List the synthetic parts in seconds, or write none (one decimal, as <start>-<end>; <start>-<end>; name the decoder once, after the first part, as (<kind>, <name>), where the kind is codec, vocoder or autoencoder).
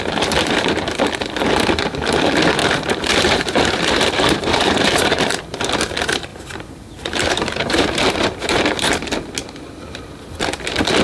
2.6-5.4 (vocoder, BigVGAN v2); 6.3-8.6; 9.4-10.3